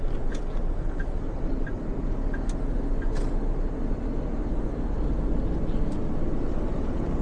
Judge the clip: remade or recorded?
recorded